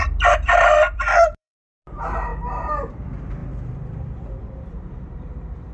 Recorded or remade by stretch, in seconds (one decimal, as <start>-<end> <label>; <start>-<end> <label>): 0.0-2.3 remade; 2.3-2.9 recorded; 2.9-5.7 remade